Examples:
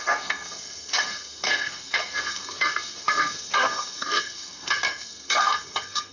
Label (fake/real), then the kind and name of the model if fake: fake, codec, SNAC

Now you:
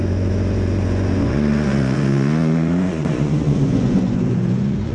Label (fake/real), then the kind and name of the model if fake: fake, vocoder, Vocos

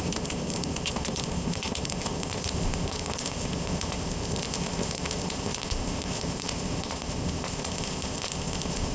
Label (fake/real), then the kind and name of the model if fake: fake, codec, ZipCodec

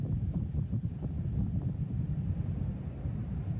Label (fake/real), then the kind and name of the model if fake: real